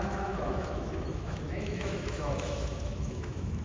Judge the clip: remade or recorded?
remade